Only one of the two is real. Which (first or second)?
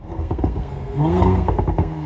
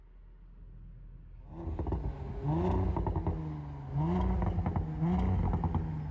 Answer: second